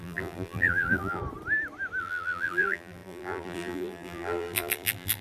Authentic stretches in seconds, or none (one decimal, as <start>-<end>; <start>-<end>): 1.2-2.0